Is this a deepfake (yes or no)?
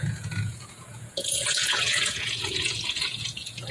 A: yes